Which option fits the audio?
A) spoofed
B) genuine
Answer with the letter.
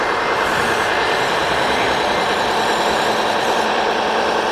A